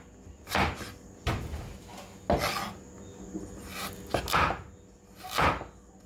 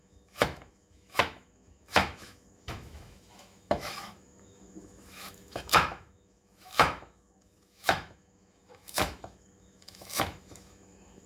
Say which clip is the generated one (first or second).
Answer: second